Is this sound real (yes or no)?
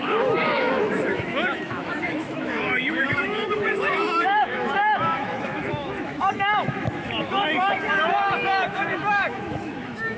no